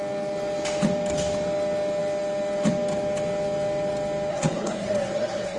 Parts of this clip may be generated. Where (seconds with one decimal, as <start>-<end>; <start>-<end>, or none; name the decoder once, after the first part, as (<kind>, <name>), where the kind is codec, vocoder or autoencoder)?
4.3-5.6 (codec, SNAC)